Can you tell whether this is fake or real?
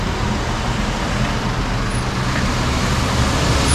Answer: real